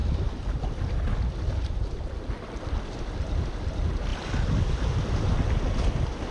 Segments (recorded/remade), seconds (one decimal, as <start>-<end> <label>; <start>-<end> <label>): 0.0-6.3 recorded